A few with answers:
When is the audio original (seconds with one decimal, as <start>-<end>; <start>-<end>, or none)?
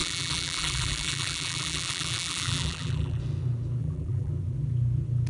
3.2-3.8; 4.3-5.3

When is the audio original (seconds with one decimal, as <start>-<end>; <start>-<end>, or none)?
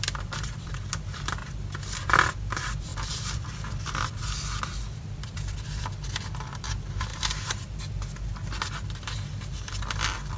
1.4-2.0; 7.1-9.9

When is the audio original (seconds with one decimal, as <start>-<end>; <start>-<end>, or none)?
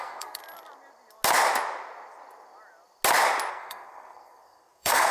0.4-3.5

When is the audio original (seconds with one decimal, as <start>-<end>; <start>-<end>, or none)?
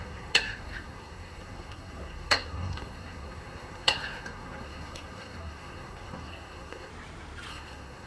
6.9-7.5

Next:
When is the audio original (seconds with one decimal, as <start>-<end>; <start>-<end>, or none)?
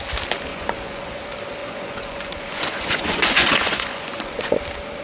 0.0-0.5; 1.2-1.6; 4.6-5.0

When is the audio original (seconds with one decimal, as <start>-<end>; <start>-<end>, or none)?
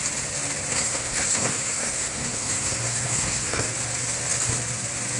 0.0-0.7; 3.7-5.2